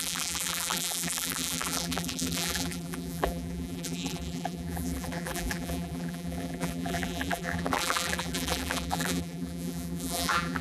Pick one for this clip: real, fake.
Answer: fake